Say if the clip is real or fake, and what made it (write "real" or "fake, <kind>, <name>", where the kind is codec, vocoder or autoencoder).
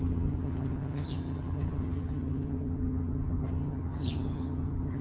fake, vocoder, HiFi-GAN